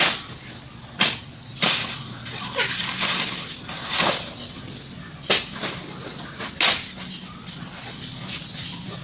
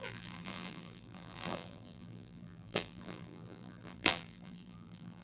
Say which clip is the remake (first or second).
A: second